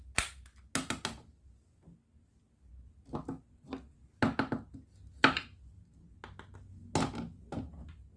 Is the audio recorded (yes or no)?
yes